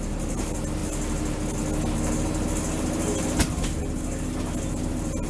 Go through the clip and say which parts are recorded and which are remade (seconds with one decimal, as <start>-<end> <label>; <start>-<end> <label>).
0.0-5.3 recorded